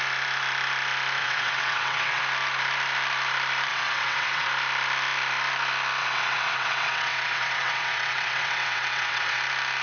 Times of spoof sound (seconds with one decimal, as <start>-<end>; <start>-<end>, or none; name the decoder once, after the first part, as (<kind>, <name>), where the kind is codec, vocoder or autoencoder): 1.2-2.2 (vocoder, WaveNeXt); 3.7-4.5; 6.0-9.4